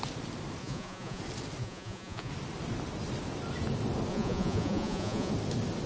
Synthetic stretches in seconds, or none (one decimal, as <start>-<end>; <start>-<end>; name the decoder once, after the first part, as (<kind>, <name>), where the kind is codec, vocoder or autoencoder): 0.6-1.2 (vocoder, Vocos); 1.6-2.3; 4.1-5.3